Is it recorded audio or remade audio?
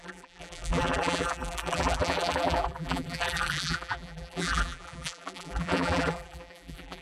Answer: remade